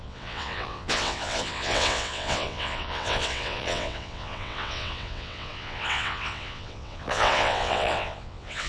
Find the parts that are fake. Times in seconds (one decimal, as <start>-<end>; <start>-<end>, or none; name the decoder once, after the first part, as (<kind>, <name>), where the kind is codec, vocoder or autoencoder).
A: 0.0-8.7 (vocoder, WaveNeXt)